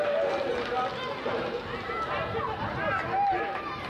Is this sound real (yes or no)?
yes